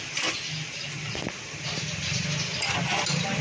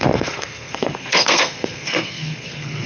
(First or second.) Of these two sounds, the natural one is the first